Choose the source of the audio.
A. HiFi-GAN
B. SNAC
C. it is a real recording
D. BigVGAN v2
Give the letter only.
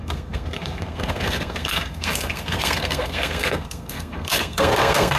B